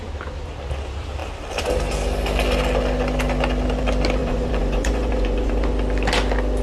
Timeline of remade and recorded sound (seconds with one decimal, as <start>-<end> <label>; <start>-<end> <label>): 0.0-4.2 recorded; 4.2-5.7 remade; 5.7-6.6 recorded